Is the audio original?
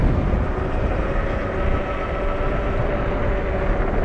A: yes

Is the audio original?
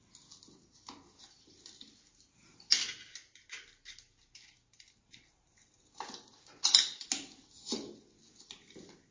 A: yes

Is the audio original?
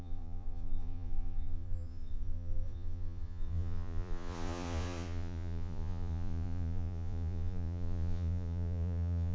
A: no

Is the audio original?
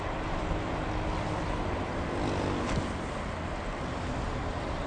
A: yes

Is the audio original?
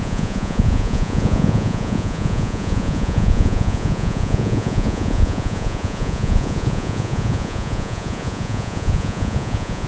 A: no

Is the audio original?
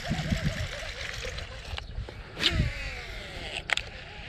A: yes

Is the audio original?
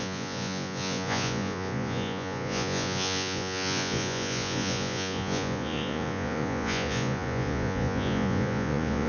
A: no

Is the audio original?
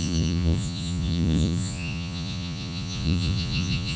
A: no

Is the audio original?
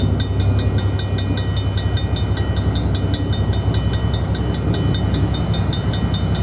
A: yes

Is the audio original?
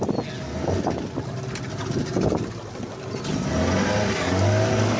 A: yes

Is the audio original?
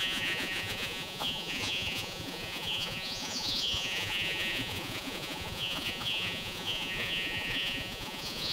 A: no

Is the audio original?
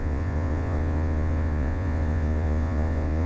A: no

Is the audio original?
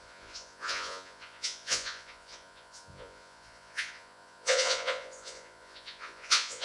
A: no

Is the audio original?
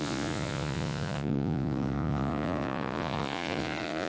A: no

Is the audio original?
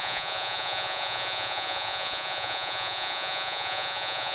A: no